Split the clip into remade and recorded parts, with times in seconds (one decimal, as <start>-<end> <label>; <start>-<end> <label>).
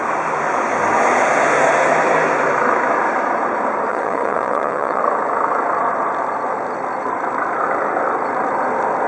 0.0-3.9 recorded; 3.9-5.0 remade; 5.0-9.1 recorded